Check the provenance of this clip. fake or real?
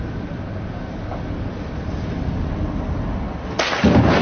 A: real